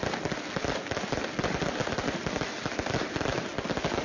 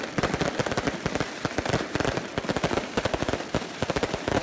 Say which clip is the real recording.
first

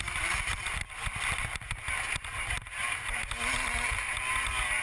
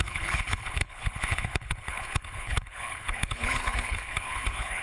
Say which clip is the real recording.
first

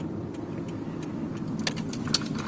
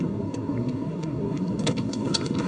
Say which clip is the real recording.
first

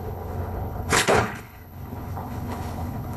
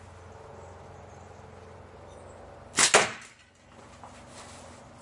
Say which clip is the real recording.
second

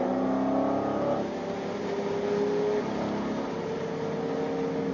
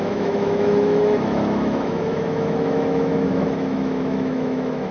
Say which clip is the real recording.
first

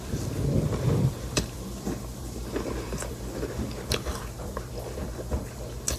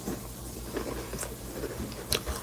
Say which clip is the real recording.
second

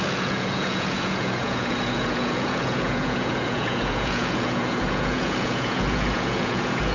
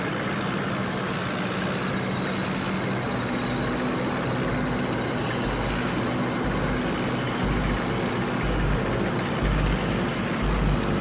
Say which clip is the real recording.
second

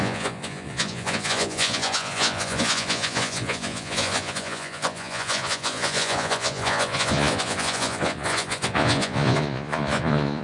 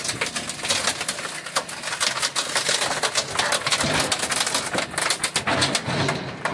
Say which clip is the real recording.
second